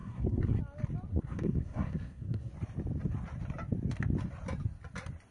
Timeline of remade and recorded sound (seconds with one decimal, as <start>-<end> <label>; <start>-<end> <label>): 0.0-0.6 remade; 0.6-1.1 recorded; 1.1-2.5 remade; 2.5-5.3 recorded